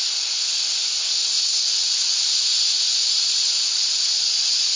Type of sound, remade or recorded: recorded